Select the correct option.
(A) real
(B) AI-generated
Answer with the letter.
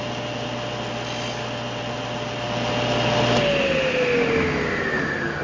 A